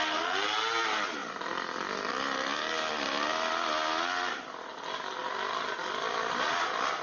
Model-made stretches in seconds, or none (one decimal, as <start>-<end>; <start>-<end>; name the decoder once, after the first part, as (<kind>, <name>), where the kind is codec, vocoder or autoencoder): none